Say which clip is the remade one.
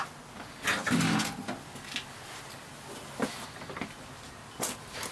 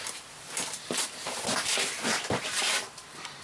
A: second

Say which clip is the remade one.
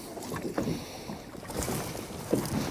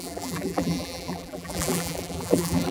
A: second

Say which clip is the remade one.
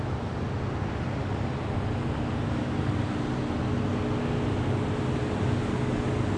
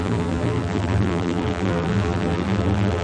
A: second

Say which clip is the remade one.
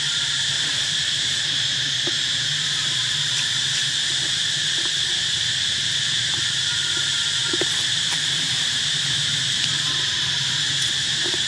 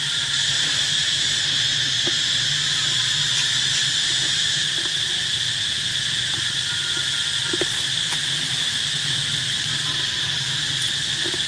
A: first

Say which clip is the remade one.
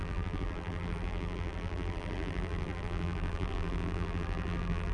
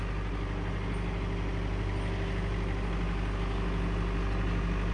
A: first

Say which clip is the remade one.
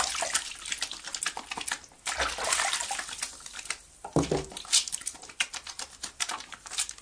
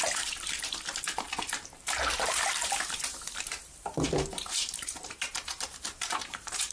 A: second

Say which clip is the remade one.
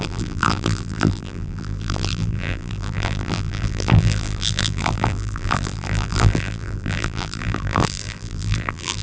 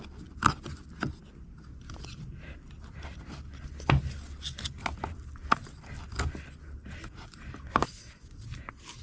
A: first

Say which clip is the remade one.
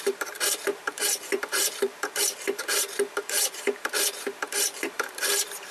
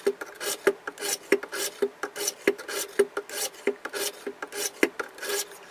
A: first